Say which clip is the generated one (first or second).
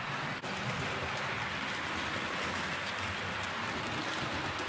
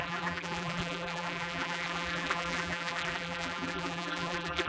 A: second